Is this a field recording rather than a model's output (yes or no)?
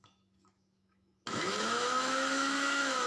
no